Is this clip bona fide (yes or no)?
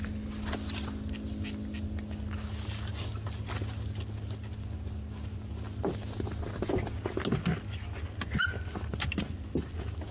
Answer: yes